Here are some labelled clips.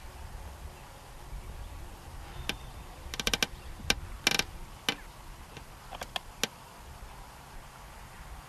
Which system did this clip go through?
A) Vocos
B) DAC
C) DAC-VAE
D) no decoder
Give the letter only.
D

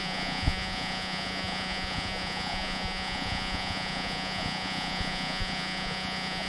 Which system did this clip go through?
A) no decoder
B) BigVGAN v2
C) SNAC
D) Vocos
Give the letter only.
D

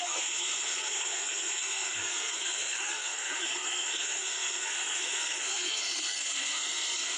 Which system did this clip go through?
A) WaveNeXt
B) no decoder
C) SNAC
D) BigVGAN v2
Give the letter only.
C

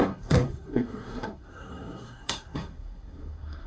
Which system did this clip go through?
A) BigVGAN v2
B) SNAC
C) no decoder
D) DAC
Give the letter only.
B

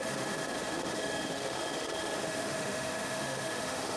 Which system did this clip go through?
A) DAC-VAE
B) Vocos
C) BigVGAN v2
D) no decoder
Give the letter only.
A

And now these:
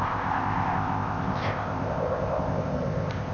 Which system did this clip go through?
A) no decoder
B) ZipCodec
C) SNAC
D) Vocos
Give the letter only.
B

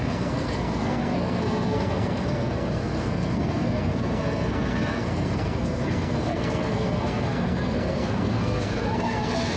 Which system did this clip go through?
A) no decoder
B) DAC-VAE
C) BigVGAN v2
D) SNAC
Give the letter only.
D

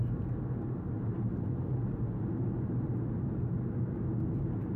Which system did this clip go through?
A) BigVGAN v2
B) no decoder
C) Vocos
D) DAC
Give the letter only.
B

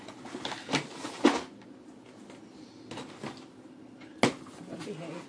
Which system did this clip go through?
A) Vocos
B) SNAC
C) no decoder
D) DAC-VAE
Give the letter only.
C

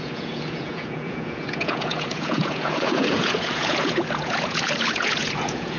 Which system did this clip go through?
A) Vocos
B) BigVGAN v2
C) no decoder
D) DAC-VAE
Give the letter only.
A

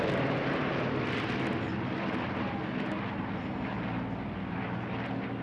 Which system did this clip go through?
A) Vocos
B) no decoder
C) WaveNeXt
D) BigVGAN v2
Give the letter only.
B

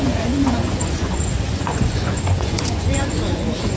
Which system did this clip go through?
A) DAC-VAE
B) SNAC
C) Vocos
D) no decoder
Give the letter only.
C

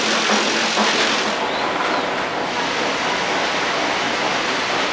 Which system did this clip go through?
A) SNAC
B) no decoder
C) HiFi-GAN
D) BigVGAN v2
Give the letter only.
B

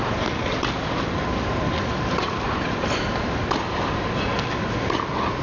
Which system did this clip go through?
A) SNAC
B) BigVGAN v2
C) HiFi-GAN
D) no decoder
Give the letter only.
D